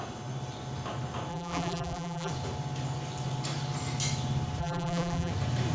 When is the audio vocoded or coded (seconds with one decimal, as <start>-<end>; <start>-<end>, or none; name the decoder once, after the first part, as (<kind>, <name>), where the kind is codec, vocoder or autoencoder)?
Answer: 1.3-2.3 (vocoder, BigVGAN v2); 4.6-5.3